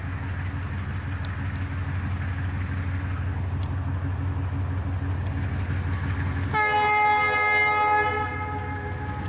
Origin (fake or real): real